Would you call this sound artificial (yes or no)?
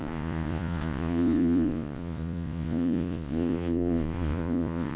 yes